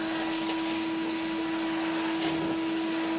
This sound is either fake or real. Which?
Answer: real